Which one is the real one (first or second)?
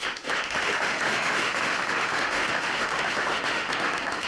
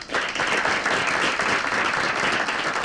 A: second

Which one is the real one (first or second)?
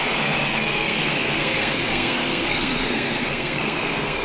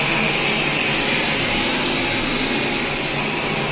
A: second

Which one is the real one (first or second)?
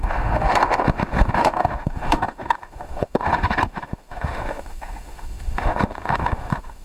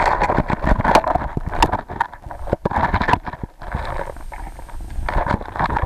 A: second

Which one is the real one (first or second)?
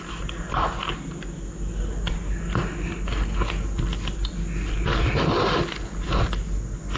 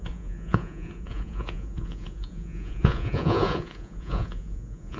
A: first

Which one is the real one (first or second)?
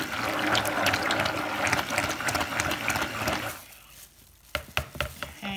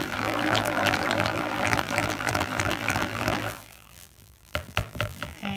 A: first